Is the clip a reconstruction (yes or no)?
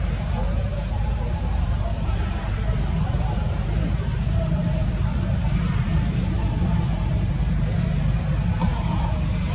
yes